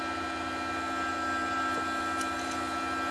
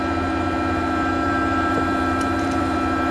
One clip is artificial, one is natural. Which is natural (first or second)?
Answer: first